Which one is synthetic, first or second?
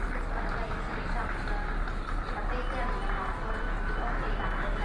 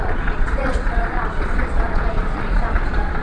second